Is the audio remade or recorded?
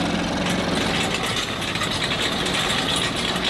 recorded